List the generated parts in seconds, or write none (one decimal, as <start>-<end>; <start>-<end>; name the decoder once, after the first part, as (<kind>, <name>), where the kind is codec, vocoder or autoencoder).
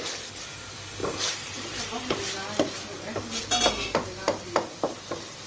none